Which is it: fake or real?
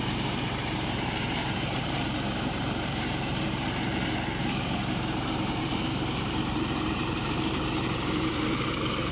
fake